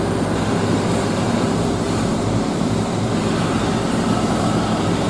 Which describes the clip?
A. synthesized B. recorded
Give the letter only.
A